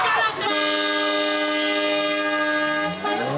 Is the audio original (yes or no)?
yes